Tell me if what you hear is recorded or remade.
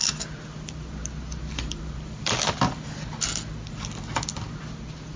recorded